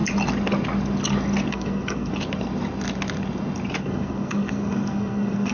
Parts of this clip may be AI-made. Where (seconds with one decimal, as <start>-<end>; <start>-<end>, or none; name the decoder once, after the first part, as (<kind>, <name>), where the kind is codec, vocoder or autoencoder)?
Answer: 1.5-2.1 (codec, SNAC); 3.8-5.5